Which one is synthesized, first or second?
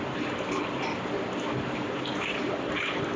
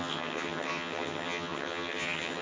second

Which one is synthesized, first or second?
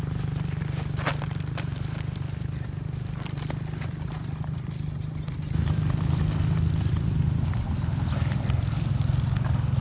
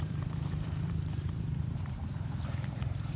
second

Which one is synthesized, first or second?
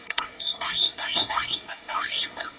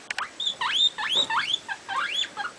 first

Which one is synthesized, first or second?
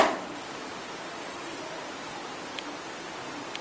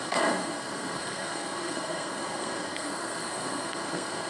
second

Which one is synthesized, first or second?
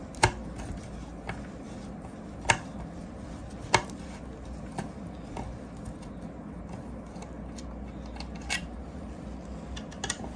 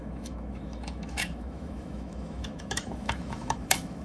second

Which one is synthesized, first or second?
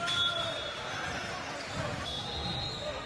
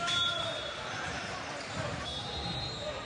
second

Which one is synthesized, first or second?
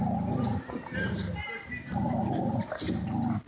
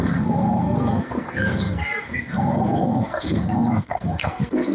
second